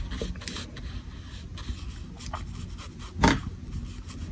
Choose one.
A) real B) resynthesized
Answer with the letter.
A